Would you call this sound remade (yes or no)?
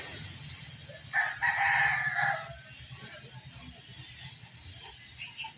no